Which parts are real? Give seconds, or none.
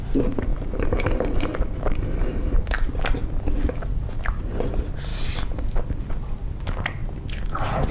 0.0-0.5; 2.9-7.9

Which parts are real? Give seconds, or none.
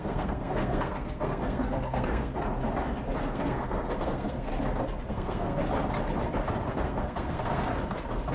2.3-3.2; 4.5-5.1; 5.6-6.7; 7.7-8.3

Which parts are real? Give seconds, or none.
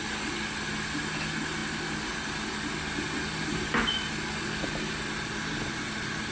0.0-6.3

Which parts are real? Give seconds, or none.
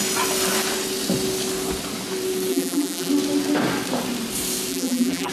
0.0-2.5; 3.1-4.7